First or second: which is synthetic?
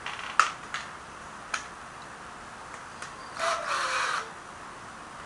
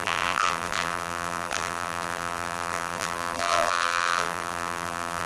second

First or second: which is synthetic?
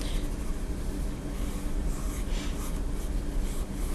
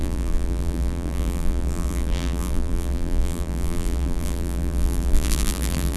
second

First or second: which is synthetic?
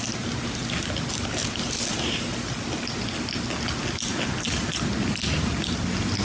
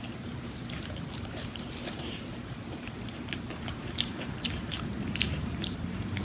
second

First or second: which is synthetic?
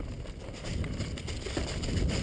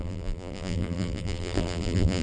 second